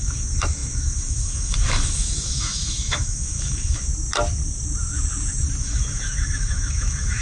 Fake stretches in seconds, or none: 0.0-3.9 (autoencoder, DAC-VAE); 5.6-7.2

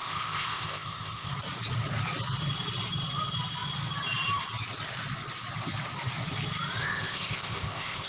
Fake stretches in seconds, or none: 0.0-1.3 (codec, ZipCodec); 6.8-8.1

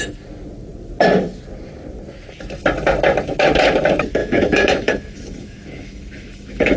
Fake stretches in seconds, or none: 4.2-6.8 (autoencoder, DAC-VAE)

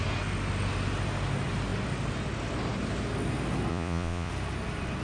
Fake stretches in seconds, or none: 3.7-4.3 (vocoder, Vocos)

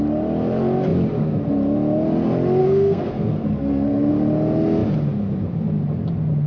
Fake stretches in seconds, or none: 2.6-4.1 (codec, SNAC)

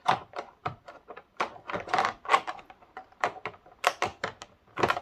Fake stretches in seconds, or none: none

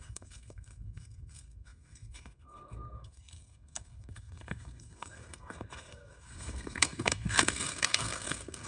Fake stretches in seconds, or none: 0.0-8.7 (codec, SNAC)